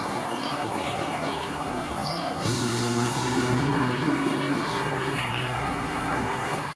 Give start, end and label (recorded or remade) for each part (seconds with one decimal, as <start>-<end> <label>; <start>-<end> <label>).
0.0-6.8 remade